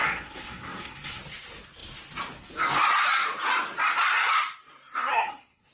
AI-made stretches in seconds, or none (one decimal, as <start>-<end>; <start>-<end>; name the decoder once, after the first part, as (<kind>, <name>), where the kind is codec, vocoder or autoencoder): 0.0-1.2 (codec, SNAC); 5.1-5.7